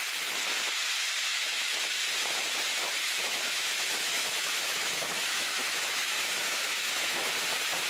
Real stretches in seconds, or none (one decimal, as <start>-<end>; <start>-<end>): 0.0-1.3; 2.0-3.0; 7.3-7.9